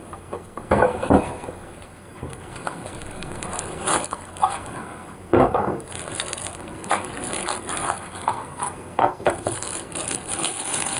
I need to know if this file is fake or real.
fake